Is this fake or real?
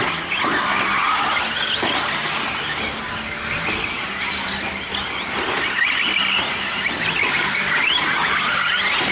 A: real